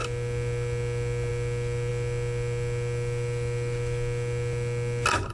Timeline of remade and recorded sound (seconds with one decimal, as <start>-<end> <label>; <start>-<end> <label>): 0.0-5.3 recorded